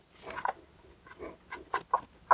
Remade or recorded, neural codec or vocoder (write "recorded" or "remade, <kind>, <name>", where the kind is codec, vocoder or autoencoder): recorded